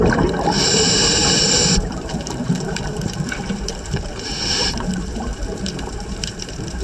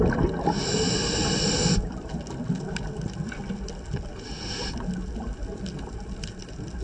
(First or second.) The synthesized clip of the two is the first